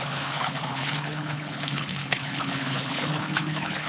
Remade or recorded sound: remade